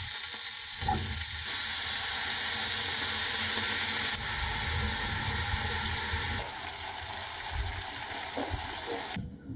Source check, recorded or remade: recorded